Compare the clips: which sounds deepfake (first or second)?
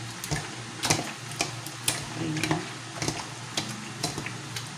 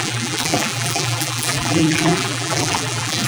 second